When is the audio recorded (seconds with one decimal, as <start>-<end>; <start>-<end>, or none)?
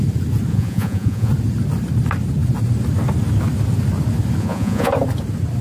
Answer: 0.0-0.5; 1.3-4.4; 4.9-5.6